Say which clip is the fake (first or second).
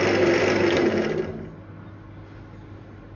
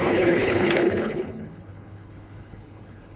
second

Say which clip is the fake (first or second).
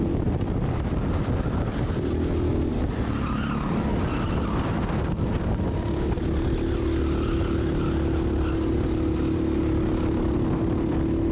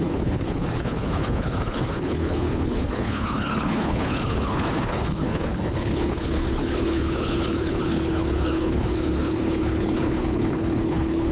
second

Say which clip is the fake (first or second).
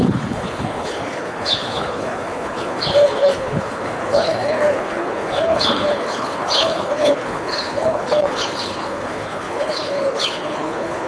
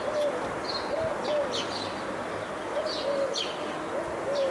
first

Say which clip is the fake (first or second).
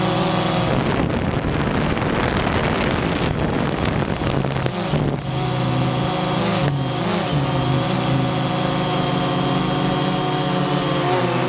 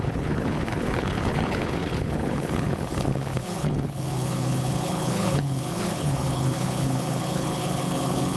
second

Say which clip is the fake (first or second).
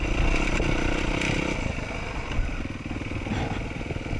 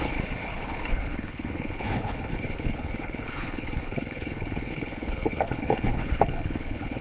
second